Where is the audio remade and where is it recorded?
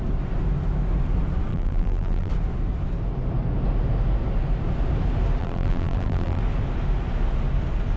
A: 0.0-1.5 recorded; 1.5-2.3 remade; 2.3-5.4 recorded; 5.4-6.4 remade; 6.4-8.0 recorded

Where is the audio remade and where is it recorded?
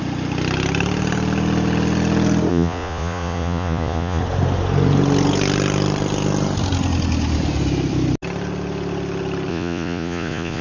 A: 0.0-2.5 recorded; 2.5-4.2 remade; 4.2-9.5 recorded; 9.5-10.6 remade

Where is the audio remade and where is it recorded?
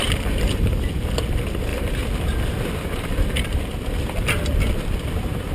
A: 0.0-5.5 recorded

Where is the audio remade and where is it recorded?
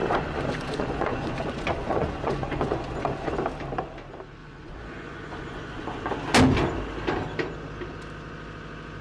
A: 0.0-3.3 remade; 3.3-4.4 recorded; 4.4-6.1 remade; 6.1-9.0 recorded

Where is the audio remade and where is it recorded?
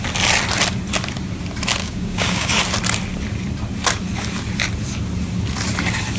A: 0.0-1.8 recorded; 1.8-2.6 remade; 2.6-6.2 recorded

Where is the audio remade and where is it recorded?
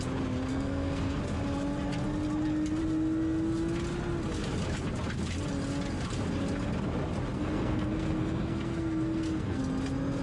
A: 0.0-0.5 recorded; 0.5-1.2 remade; 1.2-7.3 recorded; 7.3-9.6 remade; 9.6-10.2 recorded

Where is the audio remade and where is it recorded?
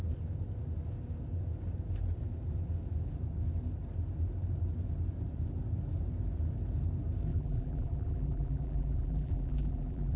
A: 0.0-7.3 recorded; 7.3-10.2 remade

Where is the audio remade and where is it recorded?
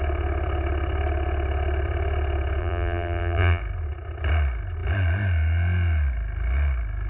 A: 0.0-2.6 recorded; 2.6-3.6 remade; 3.6-7.1 recorded